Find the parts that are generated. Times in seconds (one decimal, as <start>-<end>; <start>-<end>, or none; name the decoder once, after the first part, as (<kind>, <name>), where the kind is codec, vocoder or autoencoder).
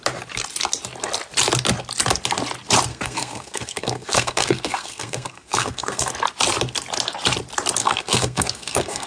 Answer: 2.9-6.1 (codec, SNAC); 7.8-9.1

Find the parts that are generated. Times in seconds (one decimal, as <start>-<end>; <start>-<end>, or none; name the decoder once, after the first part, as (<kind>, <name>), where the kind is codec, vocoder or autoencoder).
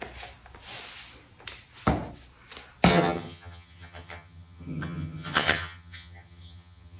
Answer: 2.9-7.0 (vocoder, HiFi-GAN)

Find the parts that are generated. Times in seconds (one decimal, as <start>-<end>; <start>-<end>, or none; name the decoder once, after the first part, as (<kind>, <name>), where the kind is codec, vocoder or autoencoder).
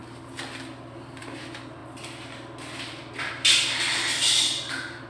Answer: none